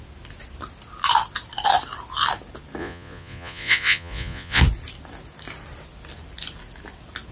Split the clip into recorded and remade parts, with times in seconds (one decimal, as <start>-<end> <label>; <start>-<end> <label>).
0.0-2.8 recorded; 2.8-4.6 remade; 4.6-7.3 recorded